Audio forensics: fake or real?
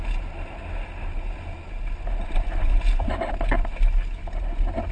real